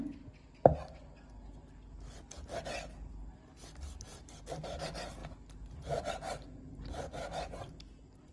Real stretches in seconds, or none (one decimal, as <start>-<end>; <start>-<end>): 0.0-4.1; 4.8-8.3